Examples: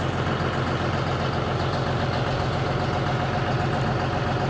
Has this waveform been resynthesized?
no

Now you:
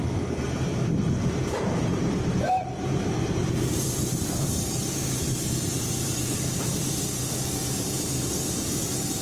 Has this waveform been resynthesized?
yes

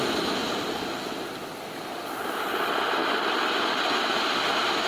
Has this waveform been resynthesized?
no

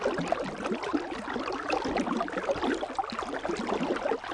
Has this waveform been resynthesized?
no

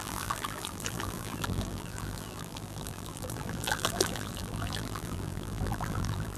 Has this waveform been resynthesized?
yes